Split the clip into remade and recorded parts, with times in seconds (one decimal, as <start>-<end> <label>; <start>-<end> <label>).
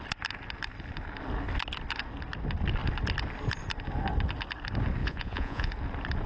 0.0-5.0 recorded; 5.0-5.7 remade; 5.7-6.3 recorded